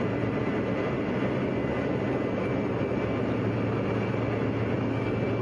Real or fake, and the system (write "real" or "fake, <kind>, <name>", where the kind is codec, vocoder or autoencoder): real